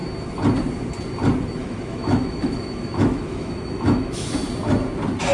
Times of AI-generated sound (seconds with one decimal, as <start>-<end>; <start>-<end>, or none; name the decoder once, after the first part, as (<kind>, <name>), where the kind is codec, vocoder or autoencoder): 1.6-4.3 (autoencoder, DAC-VAE)